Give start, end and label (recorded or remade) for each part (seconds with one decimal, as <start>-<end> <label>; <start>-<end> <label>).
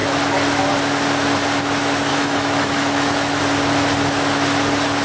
0.0-2.1 recorded; 2.1-3.4 remade; 3.4-5.0 recorded